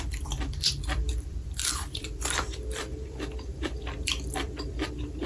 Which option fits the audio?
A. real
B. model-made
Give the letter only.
B